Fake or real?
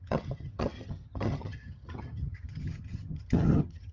fake